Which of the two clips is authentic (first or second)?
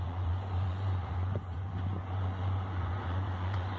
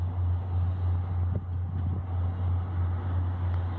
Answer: second